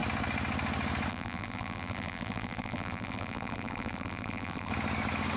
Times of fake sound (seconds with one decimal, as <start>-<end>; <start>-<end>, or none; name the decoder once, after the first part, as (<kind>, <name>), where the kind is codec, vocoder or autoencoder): 1.1-4.7 (vocoder, BigVGAN v2)